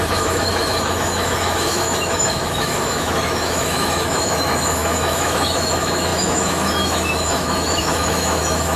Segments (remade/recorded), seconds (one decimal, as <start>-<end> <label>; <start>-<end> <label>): 0.0-8.8 remade